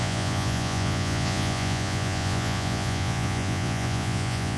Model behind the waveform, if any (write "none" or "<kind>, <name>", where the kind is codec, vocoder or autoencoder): vocoder, Vocos